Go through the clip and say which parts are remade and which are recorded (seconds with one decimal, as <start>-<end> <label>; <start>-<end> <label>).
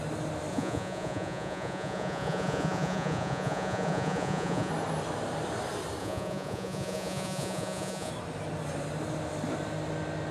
0.0-0.5 recorded; 0.5-4.7 remade; 4.7-6.0 recorded; 6.0-8.1 remade; 8.1-10.3 recorded